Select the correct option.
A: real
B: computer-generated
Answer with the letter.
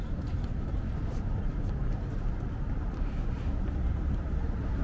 A